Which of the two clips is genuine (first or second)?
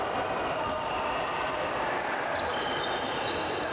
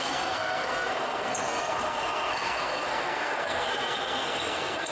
first